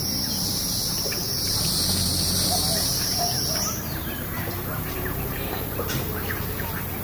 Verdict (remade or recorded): remade